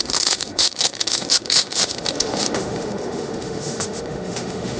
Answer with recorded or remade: remade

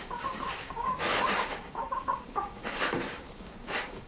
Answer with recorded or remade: remade